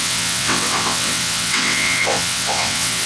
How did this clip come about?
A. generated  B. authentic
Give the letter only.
A